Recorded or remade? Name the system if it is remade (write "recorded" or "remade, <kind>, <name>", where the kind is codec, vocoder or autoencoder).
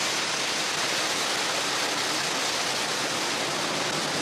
recorded